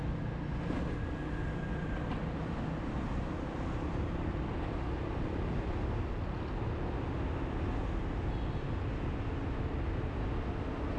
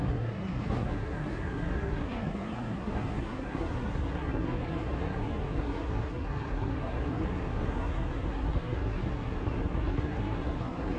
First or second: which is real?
first